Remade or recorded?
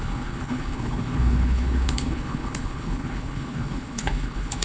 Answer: remade